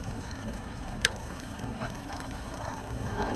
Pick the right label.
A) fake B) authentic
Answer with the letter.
A